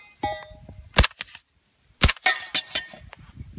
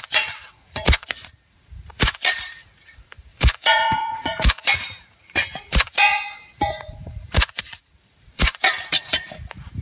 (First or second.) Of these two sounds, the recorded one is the first